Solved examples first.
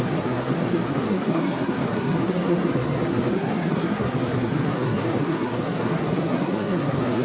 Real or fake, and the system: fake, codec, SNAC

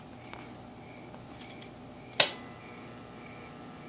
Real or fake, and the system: real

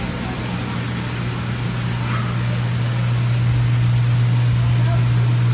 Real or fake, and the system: real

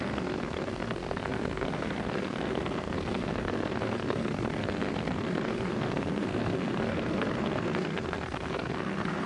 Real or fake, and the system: fake, codec, SNAC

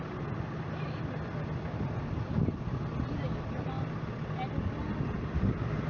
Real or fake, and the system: real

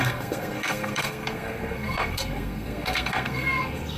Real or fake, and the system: fake, codec, SNAC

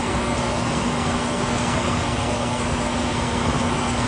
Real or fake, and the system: fake, codec, SNAC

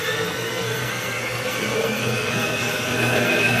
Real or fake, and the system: fake, codec, SNAC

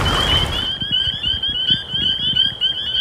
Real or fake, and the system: real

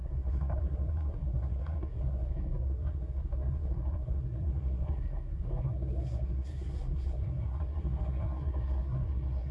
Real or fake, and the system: fake, codec, SNAC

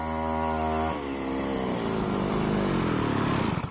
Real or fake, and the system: real